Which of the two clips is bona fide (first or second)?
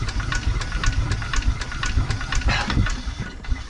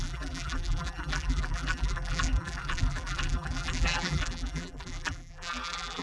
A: first